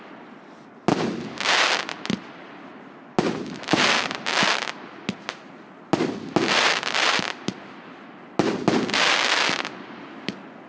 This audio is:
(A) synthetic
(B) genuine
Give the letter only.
B